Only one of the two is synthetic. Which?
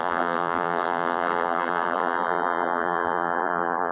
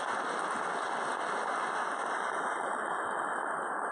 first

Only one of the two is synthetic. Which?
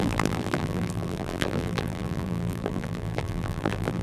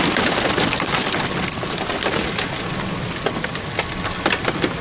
first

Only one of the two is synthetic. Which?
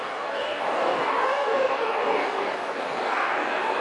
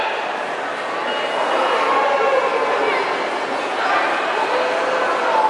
first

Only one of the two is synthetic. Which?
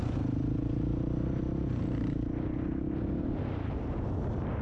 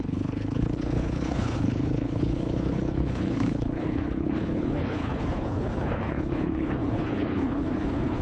second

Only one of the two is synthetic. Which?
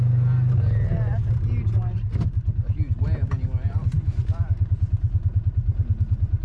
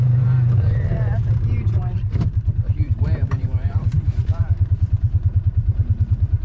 second